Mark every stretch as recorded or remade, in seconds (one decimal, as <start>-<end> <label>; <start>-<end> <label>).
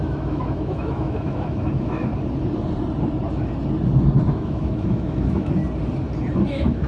0.0-2.1 remade; 2.1-4.3 recorded; 4.3-5.6 remade; 5.6-6.5 recorded; 6.5-6.9 remade